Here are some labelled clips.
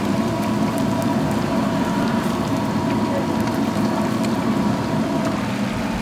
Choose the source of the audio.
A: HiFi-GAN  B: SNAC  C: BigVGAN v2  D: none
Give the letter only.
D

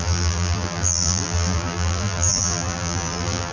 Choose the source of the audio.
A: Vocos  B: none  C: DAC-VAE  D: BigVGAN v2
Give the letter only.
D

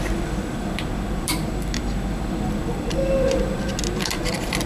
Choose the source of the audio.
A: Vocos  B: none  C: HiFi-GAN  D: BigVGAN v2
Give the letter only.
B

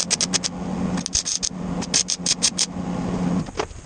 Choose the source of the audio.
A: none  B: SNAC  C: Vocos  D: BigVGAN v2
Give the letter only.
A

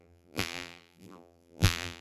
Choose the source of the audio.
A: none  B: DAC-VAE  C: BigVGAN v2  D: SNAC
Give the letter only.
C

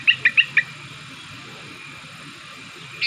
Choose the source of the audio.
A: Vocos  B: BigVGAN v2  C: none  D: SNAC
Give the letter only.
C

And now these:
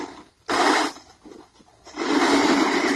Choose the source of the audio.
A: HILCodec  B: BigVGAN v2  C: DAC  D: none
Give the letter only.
D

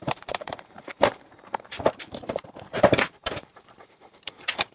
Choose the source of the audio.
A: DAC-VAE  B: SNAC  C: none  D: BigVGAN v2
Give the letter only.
D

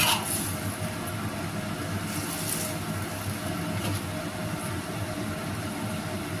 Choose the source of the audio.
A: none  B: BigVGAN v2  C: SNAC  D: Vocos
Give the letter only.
A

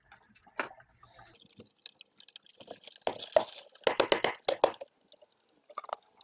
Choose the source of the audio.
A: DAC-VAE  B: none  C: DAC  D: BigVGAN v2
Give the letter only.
B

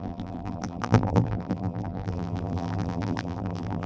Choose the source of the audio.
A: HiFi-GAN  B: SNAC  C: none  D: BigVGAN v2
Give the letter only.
D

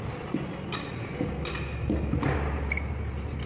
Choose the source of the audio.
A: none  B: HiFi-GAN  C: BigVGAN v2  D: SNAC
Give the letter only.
A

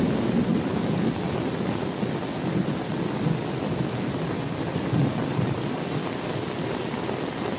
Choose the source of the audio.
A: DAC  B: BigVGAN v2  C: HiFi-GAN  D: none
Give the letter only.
D